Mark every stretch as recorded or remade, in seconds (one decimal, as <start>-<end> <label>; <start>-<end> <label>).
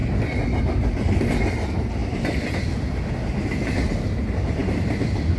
0.0-2.0 recorded; 2.0-2.5 remade; 2.5-5.4 recorded